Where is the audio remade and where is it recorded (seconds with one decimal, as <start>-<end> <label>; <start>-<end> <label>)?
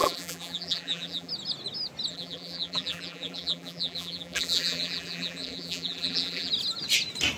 0.0-1.3 remade; 1.3-2.1 recorded; 2.1-6.5 remade; 6.5-7.4 recorded